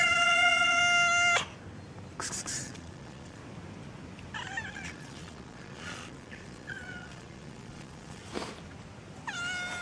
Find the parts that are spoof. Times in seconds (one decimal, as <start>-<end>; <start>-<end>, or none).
0.0-0.8; 2.3-3.4; 4.7-8.2